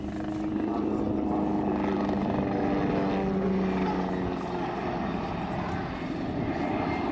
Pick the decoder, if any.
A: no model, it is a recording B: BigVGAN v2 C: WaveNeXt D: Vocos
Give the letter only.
A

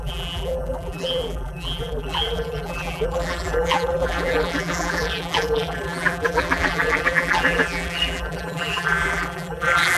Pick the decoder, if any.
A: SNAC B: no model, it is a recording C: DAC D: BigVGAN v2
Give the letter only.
D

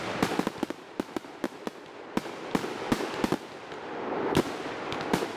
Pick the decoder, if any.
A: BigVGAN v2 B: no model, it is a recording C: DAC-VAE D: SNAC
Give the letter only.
B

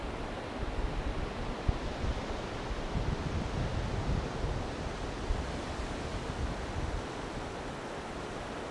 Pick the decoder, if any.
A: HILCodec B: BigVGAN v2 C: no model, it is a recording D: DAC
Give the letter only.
C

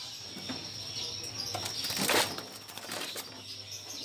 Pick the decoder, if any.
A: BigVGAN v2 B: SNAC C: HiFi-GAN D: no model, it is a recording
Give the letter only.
D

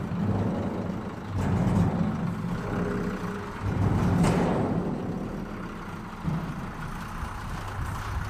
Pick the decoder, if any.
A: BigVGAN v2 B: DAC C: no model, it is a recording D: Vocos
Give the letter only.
C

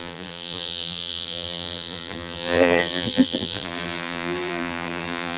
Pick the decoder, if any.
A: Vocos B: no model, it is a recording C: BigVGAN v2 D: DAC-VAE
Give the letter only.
C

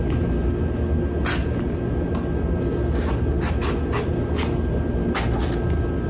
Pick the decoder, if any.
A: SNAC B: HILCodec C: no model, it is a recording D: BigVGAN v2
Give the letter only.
C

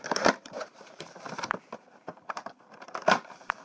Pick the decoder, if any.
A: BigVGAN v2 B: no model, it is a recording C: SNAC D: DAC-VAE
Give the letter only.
A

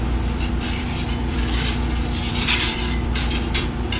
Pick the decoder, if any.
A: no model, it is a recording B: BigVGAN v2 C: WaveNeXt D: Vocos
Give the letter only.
B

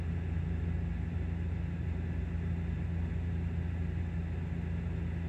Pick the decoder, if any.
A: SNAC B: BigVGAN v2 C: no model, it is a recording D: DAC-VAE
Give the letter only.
C